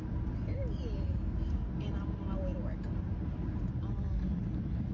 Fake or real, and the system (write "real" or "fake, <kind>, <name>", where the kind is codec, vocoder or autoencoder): real